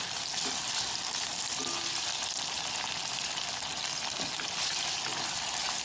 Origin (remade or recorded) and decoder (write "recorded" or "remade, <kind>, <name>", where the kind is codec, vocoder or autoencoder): recorded